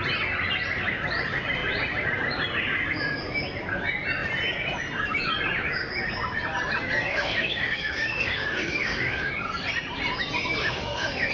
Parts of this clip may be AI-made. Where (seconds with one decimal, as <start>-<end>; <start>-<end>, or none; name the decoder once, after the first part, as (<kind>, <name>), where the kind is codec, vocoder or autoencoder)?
7.1-9.3 (autoencoder, DAC-VAE); 10.6-11.3